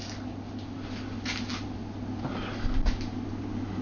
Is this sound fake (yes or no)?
no